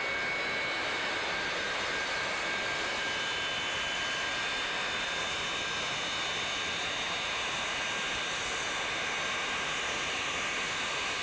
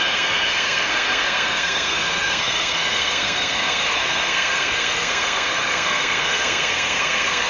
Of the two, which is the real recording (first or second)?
first